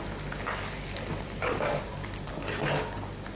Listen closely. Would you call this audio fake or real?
real